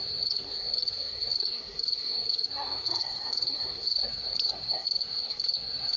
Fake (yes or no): yes